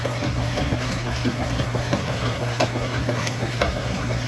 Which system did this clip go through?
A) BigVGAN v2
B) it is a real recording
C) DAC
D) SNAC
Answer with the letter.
D